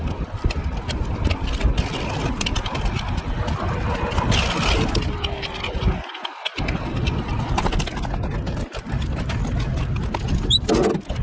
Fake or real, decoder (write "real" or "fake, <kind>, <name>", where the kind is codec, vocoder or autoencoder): real